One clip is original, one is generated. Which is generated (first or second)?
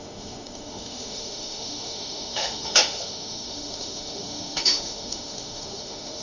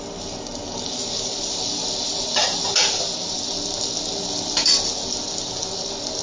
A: first